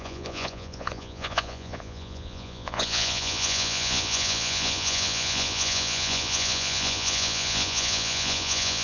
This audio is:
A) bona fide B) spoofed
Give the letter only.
B